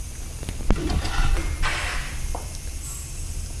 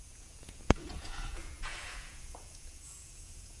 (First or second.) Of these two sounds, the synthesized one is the second